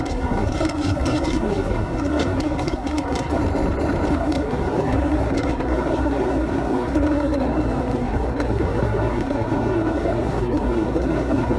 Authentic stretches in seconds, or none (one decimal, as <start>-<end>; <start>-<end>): 3.4-4.1